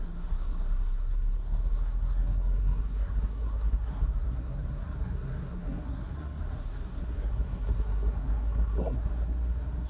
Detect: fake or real fake